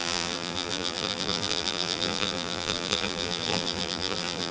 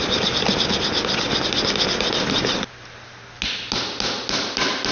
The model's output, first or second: first